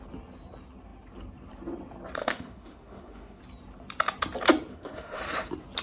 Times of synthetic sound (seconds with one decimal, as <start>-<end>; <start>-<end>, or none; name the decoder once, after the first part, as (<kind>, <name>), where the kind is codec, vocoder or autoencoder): 2.2-3.4 (autoencoder, DAC-VAE); 4.7-5.2